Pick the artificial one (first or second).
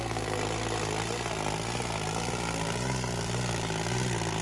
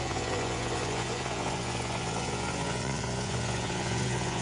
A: second